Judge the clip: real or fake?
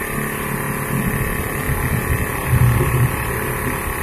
real